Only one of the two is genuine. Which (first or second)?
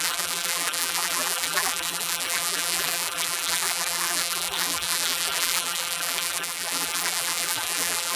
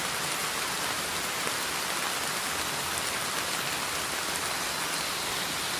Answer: second